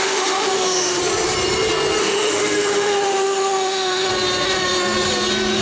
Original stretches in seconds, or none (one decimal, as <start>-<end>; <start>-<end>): 1.0-2.0; 4.1-5.6